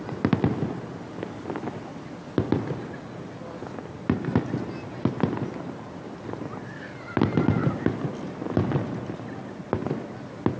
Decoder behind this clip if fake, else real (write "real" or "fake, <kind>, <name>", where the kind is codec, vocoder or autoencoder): real